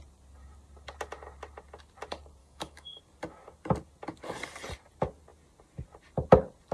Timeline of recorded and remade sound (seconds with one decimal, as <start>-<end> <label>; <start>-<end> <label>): 0.0-2.4 recorded; 2.4-3.0 remade; 3.0-6.7 recorded